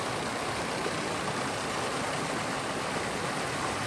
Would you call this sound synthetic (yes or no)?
no